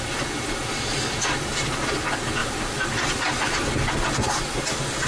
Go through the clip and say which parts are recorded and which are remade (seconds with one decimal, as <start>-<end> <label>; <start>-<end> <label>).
0.0-2.4 recorded; 2.4-3.3 remade; 3.3-5.1 recorded